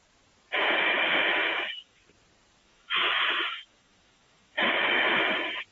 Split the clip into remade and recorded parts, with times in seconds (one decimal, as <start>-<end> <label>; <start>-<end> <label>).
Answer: 0.0-1.4 recorded; 1.4-2.0 remade; 2.0-2.6 recorded; 2.6-5.0 remade; 5.0-5.7 recorded